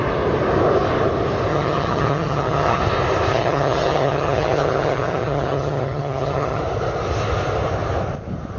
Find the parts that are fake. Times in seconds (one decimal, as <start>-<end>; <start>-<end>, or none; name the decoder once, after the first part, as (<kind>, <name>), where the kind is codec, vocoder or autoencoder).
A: 1.5-2.8 (vocoder, HiFi-GAN); 3.3-6.6